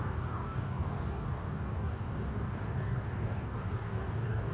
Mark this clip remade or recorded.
remade